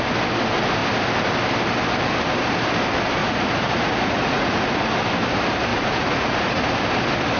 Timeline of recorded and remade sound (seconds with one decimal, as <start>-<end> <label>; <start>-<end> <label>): 0.0-3.2 recorded; 3.2-4.9 remade; 4.9-5.7 recorded; 5.7-6.6 remade; 6.6-7.4 recorded